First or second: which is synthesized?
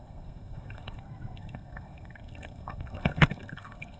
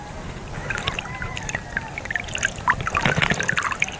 first